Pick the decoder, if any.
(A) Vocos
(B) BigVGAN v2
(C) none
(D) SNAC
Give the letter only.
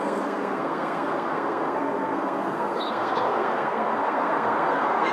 D